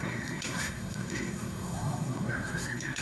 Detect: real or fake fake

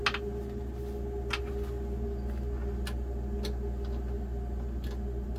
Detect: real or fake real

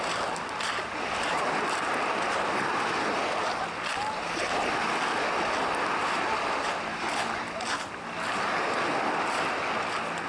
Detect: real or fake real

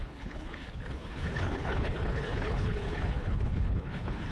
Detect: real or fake fake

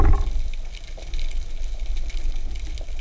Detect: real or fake real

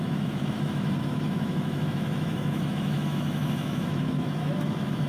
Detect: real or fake fake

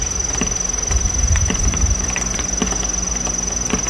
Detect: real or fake real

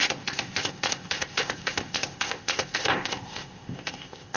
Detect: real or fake fake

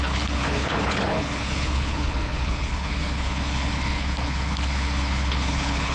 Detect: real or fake fake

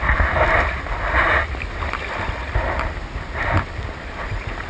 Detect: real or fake real